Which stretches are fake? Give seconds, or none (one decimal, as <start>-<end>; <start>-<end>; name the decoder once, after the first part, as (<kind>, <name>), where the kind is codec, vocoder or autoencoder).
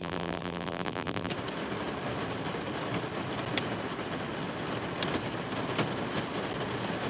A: 0.0-1.3 (vocoder, BigVGAN v2)